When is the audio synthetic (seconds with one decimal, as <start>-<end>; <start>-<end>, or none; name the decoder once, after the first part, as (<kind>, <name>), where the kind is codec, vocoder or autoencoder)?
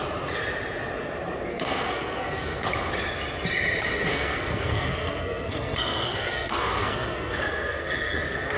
1.5-2.6 (codec, SNAC); 4.1-8.6